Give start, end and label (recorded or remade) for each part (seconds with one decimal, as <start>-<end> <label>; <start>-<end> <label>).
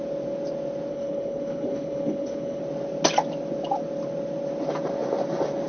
0.0-0.9 recorded; 0.9-2.6 remade; 2.6-5.7 recorded